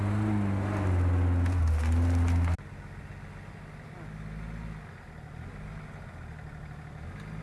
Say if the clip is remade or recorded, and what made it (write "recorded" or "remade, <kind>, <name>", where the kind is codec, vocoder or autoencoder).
recorded